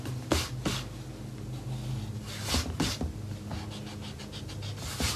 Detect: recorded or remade recorded